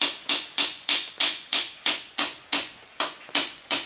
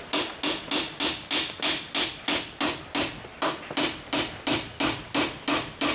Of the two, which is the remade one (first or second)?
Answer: first